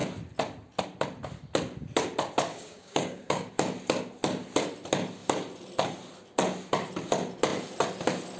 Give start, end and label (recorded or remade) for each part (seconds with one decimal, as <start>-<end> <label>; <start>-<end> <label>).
0.0-2.5 recorded; 2.5-3.5 remade; 3.5-8.4 recorded